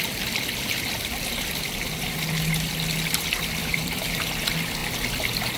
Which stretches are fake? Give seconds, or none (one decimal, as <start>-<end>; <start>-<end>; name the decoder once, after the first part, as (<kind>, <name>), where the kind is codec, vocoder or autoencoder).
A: 3.6-4.3 (vocoder, BigVGAN v2)